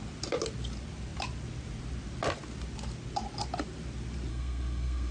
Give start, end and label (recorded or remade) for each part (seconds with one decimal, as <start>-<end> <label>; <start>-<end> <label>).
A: 0.0-4.3 recorded; 4.3-5.1 remade